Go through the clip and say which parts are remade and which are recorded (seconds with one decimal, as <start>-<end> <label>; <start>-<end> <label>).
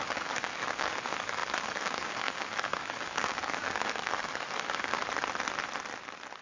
0.0-5.0 remade; 5.0-6.4 recorded